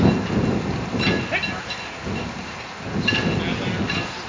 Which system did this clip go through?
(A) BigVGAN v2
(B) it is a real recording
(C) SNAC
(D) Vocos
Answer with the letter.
B